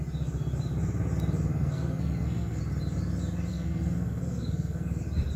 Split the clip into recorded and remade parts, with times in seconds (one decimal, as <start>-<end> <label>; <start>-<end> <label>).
0.0-1.6 recorded; 1.6-2.6 remade; 2.6-3.5 recorded; 3.5-5.0 remade; 5.0-5.4 recorded